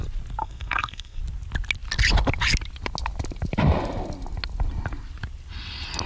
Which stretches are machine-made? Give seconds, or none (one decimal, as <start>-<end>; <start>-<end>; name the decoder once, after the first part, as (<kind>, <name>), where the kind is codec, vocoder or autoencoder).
0.4-1.2 (codec, SNAC)